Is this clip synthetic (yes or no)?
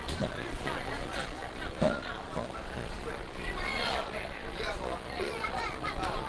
yes